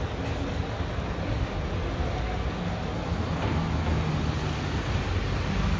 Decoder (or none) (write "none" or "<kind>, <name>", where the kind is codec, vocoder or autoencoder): none